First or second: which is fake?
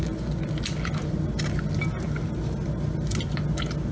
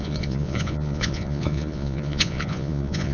second